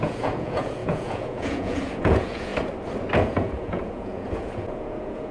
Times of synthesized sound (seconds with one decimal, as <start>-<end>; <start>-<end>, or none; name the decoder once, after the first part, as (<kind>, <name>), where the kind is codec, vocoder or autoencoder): 0.0-2.5 (vocoder, Vocos); 3.2-5.3